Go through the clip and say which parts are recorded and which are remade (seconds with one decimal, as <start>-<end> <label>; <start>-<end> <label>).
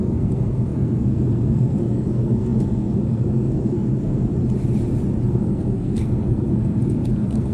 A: 0.0-4.3 remade; 4.3-5.3 recorded; 5.3-7.5 remade